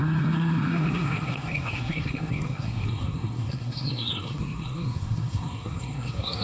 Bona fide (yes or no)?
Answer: no